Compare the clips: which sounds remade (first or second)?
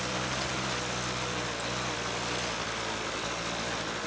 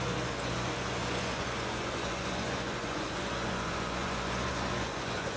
second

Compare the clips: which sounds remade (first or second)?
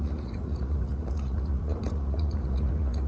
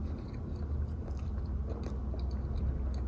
first